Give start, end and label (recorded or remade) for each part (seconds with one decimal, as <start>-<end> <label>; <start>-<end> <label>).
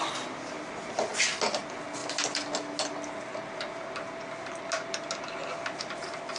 0.0-6.4 recorded